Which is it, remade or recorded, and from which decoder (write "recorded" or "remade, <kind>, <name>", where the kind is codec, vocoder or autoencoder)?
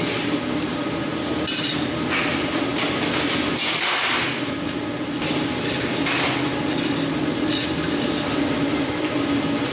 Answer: recorded